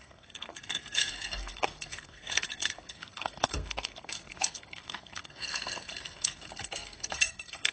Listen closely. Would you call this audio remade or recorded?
remade